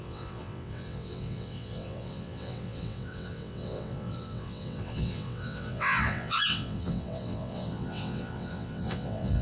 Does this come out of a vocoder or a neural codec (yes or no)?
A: yes